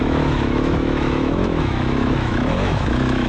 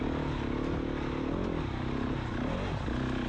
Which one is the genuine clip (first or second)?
second